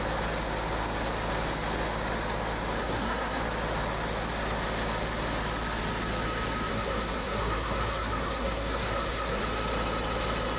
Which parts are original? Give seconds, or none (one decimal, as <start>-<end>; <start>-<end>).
0.0-2.8; 3.4-6.7; 9.4-10.6